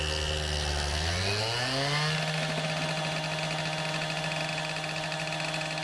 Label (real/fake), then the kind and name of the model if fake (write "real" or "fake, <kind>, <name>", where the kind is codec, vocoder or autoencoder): real